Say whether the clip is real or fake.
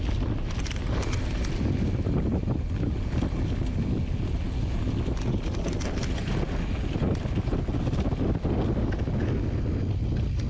real